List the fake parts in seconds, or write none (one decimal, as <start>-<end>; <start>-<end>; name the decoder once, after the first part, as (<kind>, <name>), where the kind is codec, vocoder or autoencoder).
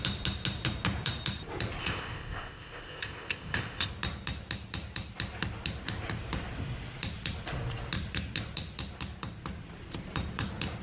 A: 1.8-3.9 (codec, ZipCodec)